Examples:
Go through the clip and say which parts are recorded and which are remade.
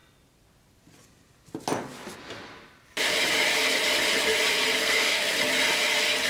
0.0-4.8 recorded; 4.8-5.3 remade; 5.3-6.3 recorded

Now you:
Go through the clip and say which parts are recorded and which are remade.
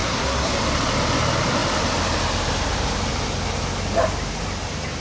0.0-0.5 remade; 0.5-5.0 recorded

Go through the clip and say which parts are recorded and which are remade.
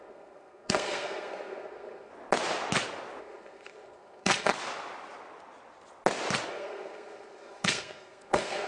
0.0-2.1 remade; 2.1-3.2 recorded; 3.2-4.5 remade; 4.5-6.5 recorded; 6.5-8.7 remade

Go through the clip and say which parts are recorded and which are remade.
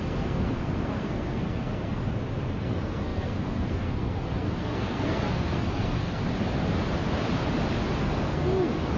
0.0-2.0 remade; 2.0-2.6 recorded; 2.6-6.2 remade; 6.2-8.0 recorded; 8.0-9.0 remade